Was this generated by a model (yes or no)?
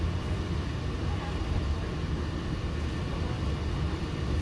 no